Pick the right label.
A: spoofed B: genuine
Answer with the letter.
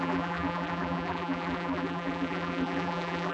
A